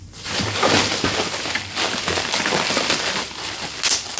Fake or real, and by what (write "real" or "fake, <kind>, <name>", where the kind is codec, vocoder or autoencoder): real